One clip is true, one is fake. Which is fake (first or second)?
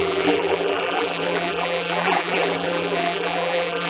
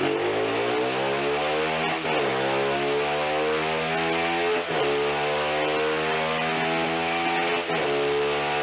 first